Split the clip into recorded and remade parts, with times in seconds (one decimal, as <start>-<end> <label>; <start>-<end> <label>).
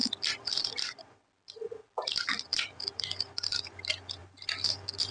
0.0-2.5 recorded; 2.5-3.2 remade; 3.2-5.1 recorded